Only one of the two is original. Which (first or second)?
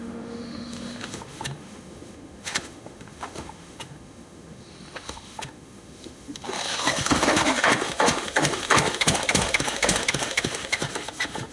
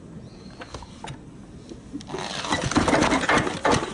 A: second